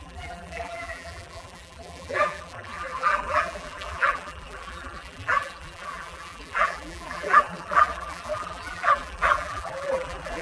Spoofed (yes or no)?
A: yes